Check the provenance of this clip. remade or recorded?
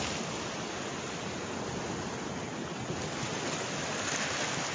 recorded